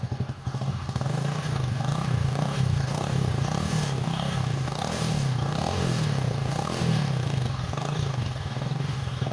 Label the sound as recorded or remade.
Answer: remade